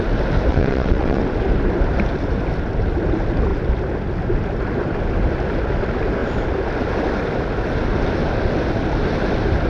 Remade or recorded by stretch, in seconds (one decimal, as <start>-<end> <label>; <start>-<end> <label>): 0.0-0.5 recorded; 0.5-1.2 remade; 1.2-9.7 recorded